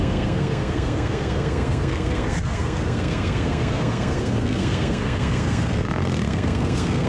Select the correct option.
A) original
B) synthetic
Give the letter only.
B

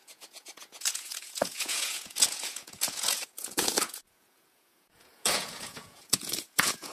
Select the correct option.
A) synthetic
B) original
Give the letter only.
A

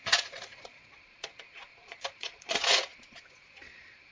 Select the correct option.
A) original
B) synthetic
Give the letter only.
B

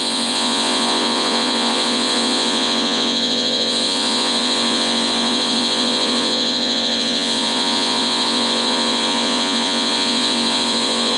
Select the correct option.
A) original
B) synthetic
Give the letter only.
B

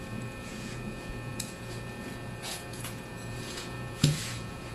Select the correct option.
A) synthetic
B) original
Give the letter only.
A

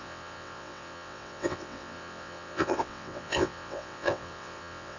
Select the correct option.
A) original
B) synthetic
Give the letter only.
B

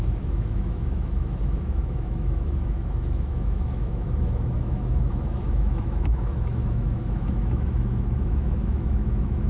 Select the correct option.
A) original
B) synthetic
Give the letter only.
B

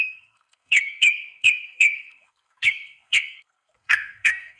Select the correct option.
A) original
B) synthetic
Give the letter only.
B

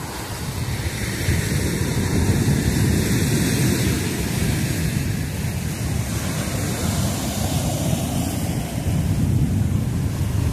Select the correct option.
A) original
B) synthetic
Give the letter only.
A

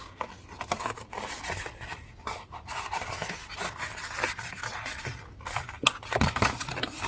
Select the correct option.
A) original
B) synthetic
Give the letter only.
A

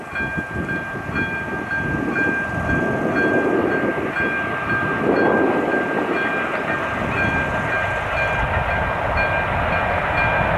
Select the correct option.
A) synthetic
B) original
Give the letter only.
B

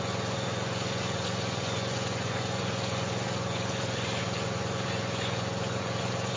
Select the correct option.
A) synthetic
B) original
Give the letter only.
A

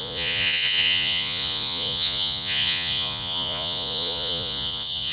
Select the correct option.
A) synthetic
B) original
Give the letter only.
A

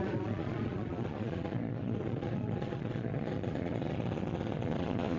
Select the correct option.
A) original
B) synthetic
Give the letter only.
B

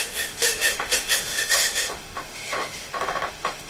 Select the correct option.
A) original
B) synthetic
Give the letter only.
B